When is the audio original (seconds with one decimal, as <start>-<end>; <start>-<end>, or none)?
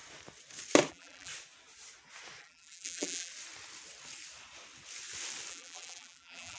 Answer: 0.0-0.9; 1.3-2.4; 3.3-5.5